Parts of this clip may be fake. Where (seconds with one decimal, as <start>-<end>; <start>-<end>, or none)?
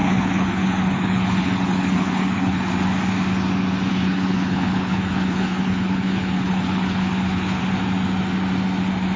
0.0-2.7; 3.9-7.6